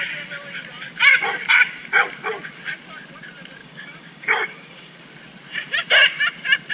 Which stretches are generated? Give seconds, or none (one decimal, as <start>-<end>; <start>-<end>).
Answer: 3.6-5.0